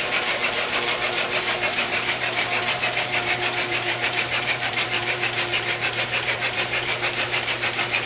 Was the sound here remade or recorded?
remade